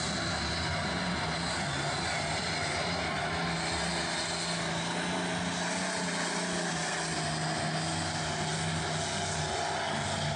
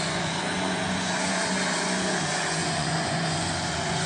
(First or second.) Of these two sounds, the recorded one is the first